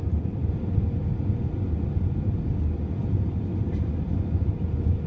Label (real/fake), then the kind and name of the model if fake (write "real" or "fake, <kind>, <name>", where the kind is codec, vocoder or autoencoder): real